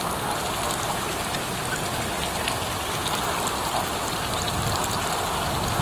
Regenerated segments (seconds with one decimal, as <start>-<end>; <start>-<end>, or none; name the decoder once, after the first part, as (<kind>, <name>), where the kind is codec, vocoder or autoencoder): none